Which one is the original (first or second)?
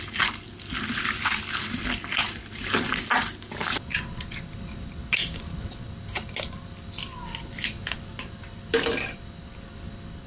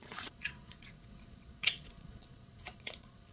first